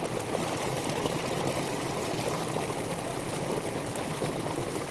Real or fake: real